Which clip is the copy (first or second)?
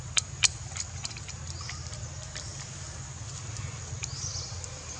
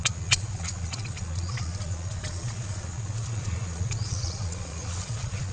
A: second